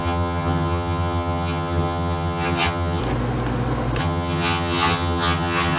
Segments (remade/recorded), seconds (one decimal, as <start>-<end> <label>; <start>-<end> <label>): 0.0-3.0 remade; 3.0-4.0 recorded; 4.0-5.8 remade

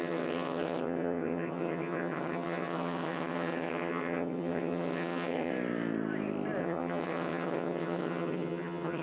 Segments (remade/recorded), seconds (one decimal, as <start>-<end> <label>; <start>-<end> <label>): 0.0-5.5 remade; 5.5-6.6 recorded; 6.6-9.0 remade

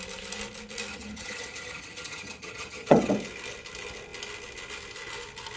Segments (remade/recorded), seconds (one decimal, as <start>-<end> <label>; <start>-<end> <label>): 0.0-0.9 recorded; 0.9-3.1 remade; 3.1-5.6 recorded